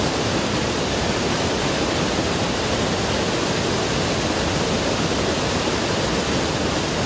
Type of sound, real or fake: real